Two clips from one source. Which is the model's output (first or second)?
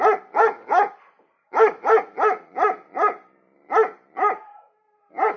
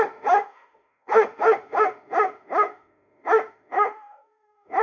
second